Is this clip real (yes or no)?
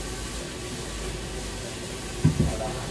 yes